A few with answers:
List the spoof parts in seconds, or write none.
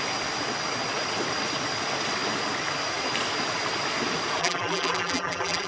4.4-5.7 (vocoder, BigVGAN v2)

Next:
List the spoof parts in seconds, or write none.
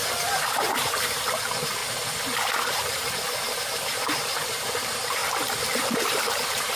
0.0-1.8 (vocoder, BigVGAN v2); 2.7-5.2; 5.7-6.8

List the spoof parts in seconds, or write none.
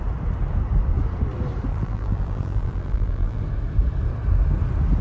1.7-3.4 (vocoder, BigVGAN v2)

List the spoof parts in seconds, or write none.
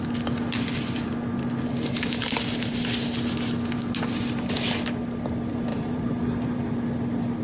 5.7-6.8 (vocoder, BigVGAN v2)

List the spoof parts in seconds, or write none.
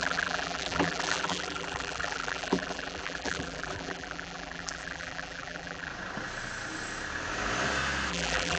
0.0-5.9 (vocoder, BigVGAN v2); 8.1-8.6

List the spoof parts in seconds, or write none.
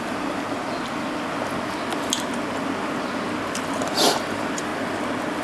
0.0-0.6 (vocoder, BigVGAN v2); 3.8-4.7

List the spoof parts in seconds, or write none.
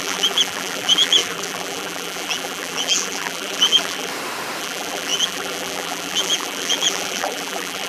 0.0-4.1 (vocoder, BigVGAN v2); 4.6-7.9